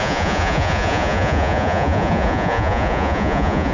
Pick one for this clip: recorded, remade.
remade